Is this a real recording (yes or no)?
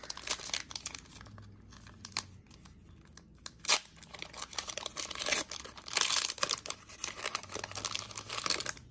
yes